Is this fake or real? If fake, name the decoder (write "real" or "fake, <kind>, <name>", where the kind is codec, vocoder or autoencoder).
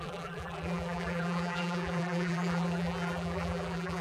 fake, vocoder, BigVGAN v2